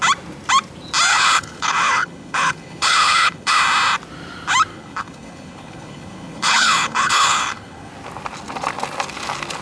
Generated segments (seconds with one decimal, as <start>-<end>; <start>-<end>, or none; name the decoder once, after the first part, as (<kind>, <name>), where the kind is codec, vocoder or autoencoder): 1.1-3.6 (codec, HILCodec); 4.7-7.9